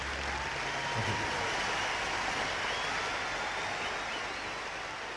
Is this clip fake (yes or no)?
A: no